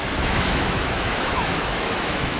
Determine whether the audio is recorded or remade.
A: remade